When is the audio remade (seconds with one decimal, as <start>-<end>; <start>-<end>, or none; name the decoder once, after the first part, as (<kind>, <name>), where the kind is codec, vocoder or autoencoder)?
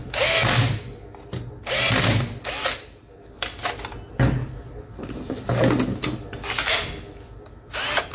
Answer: none